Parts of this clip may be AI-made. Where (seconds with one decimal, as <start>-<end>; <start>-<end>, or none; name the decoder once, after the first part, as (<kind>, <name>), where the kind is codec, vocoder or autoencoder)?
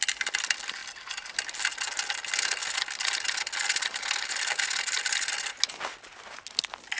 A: none